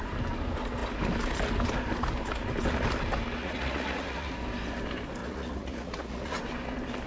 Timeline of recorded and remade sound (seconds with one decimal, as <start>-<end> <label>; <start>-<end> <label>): 0.0-3.4 recorded; 3.4-4.3 remade; 4.3-5.2 recorded; 5.2-6.4 remade; 6.4-7.1 recorded

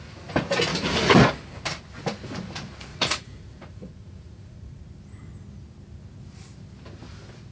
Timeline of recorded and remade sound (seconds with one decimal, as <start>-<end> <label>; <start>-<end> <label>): 0.0-0.7 recorded; 0.7-1.3 remade; 1.3-2.9 recorded; 2.9-4.9 remade; 4.9-7.5 recorded

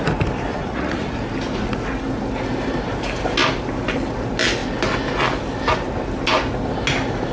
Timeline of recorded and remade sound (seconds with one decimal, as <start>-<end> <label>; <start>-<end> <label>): 0.0-0.5 recorded; 0.5-1.2 remade; 1.2-7.3 recorded

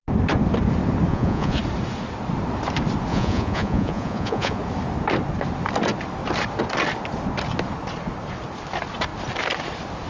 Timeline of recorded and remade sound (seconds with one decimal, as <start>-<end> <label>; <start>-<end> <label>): 0.0-1.1 recorded; 1.1-1.6 remade; 1.6-3.1 recorded; 3.1-4.6 remade; 4.6-10.1 recorded